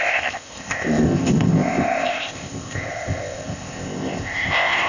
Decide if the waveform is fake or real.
fake